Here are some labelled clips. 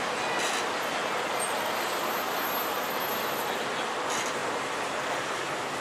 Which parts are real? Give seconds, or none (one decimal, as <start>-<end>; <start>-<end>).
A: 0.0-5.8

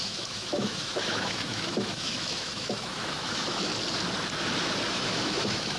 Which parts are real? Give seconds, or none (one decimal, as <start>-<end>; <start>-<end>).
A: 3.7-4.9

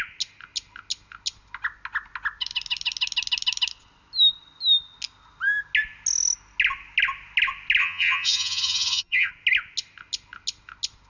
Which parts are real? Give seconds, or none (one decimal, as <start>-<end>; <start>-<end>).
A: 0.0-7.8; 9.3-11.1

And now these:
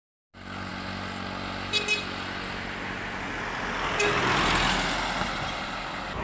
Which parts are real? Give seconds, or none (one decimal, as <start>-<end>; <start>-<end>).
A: 0.0-6.2

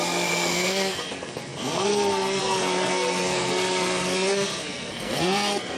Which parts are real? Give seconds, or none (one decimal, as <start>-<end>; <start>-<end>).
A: none

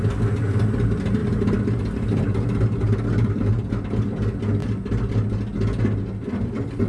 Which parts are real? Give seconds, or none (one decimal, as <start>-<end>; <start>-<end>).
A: 0.0-6.9

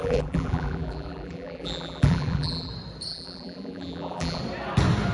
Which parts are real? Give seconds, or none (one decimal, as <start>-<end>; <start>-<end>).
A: 2.7-3.1; 4.4-5.1

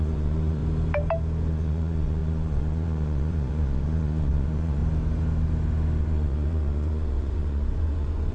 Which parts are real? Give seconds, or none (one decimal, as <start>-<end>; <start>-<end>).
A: 0.6-1.5; 4.8-6.0